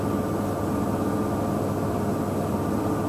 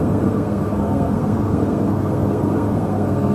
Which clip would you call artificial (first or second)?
second